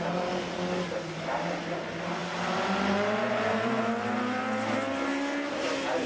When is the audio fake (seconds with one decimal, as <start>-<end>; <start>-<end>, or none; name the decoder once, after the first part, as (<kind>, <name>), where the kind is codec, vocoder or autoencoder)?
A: none